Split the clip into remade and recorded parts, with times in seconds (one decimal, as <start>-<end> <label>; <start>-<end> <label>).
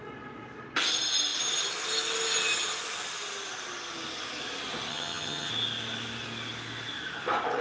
0.0-4.9 recorded; 4.9-5.5 remade; 5.5-7.6 recorded